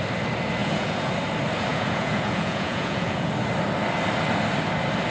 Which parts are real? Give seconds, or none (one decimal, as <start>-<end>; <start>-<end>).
0.0-0.6; 1.1-1.7; 3.3-5.1